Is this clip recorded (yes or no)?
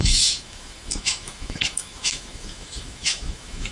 no